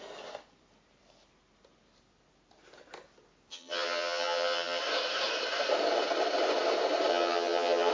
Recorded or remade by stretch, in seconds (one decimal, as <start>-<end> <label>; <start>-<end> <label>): 0.0-3.5 recorded; 3.5-4.8 remade; 4.8-7.1 recorded; 7.1-7.9 remade